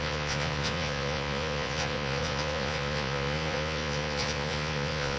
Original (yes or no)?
no